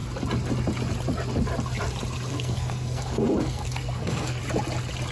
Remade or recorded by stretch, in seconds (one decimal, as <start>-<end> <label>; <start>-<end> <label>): 0.0-2.3 recorded; 2.3-4.4 remade; 4.4-5.1 recorded